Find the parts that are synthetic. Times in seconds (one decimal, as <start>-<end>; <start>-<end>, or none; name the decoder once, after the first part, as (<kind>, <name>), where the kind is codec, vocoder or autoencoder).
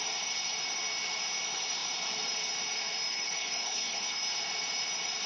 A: 3.1-4.2 (codec, HILCodec)